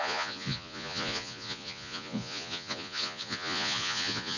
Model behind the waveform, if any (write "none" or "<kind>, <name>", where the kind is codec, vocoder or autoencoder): vocoder, Vocos